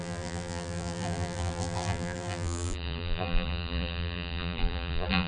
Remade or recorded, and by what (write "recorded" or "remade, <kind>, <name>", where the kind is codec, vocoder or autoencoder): remade, vocoder, BigVGAN v2